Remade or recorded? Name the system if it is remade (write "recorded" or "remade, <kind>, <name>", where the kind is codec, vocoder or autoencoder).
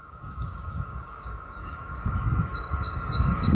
remade, codec, DAC